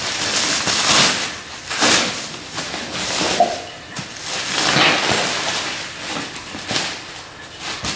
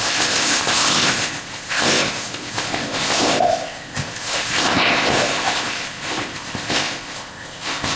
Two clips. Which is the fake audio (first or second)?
second